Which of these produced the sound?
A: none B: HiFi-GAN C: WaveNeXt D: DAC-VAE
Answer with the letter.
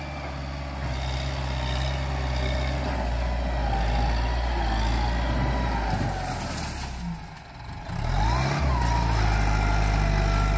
A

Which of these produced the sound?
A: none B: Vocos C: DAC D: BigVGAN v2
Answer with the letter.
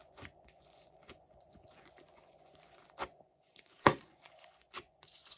B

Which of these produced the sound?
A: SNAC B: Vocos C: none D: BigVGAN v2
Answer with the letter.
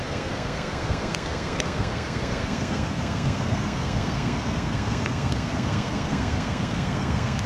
A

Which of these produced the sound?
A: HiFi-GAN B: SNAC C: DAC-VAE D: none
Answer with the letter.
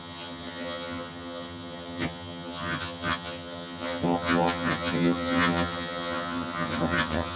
A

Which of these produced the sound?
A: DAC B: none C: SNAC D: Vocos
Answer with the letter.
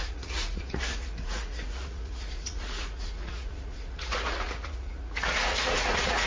D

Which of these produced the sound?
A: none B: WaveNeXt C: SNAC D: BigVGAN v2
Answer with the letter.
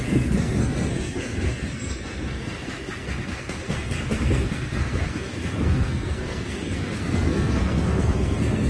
C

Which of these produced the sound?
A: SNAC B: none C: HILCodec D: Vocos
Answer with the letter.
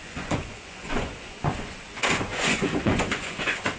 D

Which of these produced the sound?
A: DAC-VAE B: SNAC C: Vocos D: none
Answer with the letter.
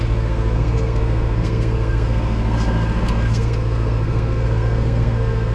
B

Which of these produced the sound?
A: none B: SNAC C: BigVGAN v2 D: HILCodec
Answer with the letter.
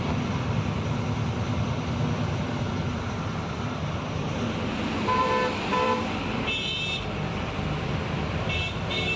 C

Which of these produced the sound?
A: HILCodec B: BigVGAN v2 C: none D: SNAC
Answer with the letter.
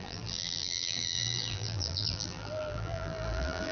B